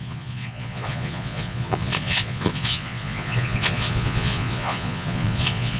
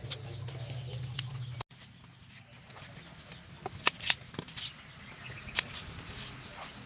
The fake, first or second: first